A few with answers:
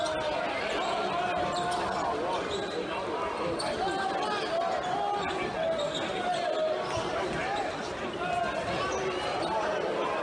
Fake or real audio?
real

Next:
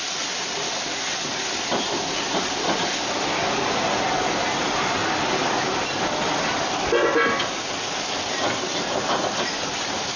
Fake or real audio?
real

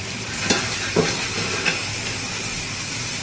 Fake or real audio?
real